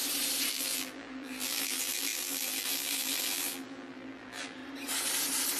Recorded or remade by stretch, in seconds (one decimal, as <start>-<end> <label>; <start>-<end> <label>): 0.0-0.5 recorded; 0.5-4.6 remade; 4.6-5.6 recorded

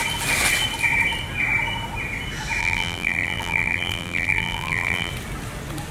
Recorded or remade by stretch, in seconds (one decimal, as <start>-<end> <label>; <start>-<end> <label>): 0.0-2.6 recorded; 2.6-5.1 remade; 5.1-5.9 recorded